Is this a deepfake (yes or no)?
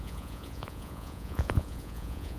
yes